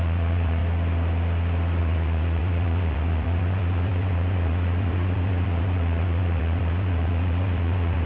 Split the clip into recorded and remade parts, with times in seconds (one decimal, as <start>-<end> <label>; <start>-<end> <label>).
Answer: 0.0-0.6 remade; 0.6-1.8 recorded; 1.8-8.1 remade